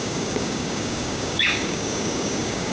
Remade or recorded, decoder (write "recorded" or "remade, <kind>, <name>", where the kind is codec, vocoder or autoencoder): remade, codec, DAC